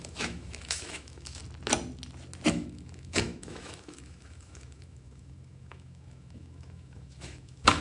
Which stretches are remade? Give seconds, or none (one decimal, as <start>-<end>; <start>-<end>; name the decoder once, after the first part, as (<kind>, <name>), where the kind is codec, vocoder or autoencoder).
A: 0.0-1.4 (autoencoder, DAC-VAE); 2.5-7.8